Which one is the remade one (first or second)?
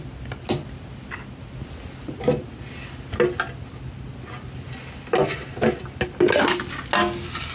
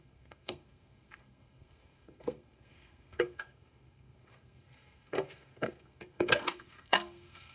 second